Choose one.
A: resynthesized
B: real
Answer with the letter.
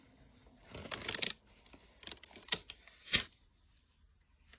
B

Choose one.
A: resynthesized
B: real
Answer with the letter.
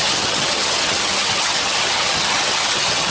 A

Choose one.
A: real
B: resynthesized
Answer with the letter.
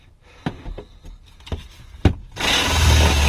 A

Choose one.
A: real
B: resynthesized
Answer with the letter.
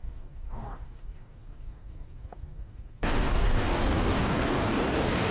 B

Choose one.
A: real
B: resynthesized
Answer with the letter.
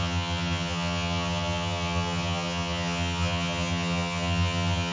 B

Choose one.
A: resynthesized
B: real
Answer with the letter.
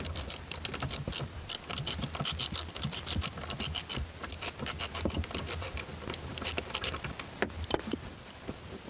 A